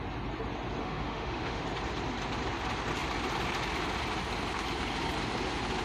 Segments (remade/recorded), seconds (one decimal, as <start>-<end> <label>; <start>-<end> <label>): 0.0-0.8 recorded; 0.8-1.6 remade; 1.6-5.8 recorded